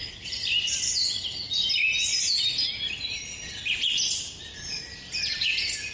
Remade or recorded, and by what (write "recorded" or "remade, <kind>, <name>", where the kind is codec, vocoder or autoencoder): recorded